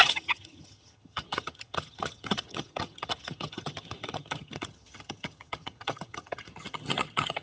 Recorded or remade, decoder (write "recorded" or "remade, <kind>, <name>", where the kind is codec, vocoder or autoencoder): remade, vocoder, HiFi-GAN